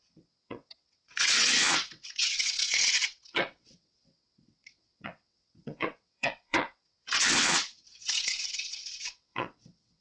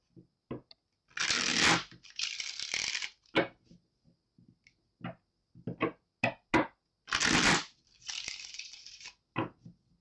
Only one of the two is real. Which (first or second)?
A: second